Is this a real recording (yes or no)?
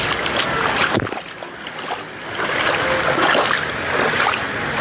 yes